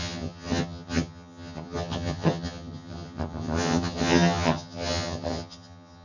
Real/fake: fake